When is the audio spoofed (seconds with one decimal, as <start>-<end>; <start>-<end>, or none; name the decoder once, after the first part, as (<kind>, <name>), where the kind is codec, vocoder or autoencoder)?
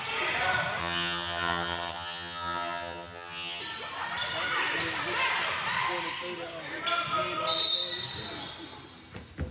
0.8-3.6 (vocoder, HiFi-GAN)